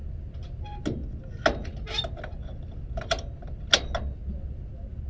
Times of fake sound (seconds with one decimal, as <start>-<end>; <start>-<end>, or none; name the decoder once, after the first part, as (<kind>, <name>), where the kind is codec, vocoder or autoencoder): none